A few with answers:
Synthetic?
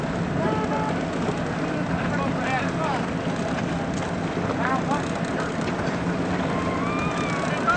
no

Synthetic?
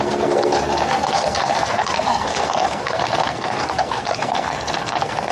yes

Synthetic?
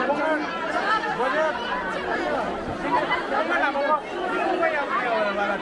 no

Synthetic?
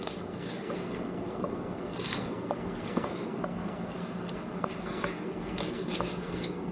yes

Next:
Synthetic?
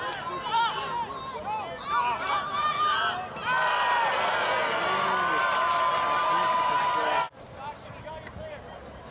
no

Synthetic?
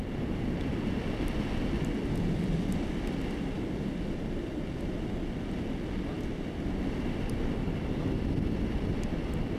no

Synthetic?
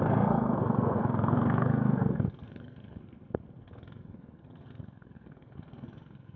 yes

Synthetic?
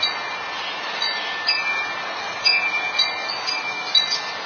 no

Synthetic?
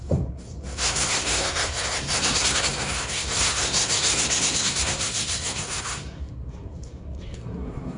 yes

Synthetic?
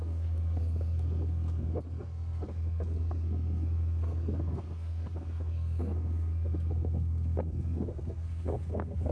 yes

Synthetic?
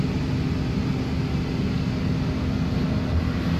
no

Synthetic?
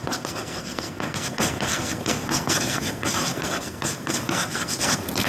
yes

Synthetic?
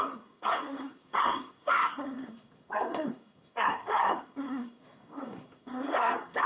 yes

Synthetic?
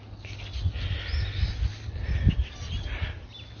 no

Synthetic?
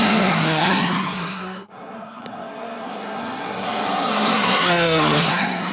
yes